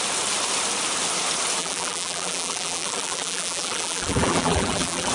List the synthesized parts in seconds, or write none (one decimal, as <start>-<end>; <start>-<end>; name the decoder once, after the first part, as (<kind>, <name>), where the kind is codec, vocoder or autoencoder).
1.6-5.1 (vocoder, BigVGAN v2)